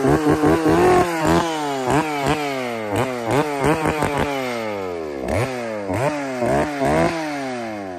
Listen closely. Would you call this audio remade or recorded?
recorded